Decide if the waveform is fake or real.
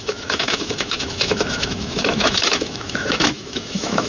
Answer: fake